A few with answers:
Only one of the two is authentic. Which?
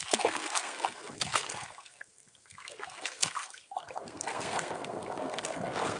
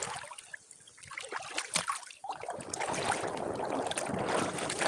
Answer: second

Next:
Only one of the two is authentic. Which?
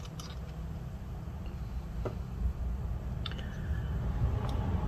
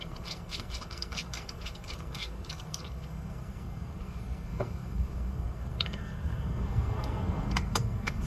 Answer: first